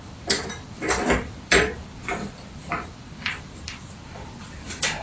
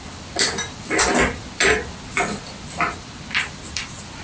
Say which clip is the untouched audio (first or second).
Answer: second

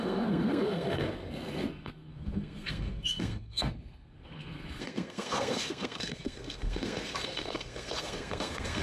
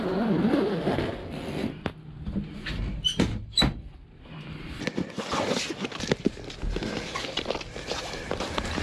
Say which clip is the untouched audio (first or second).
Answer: second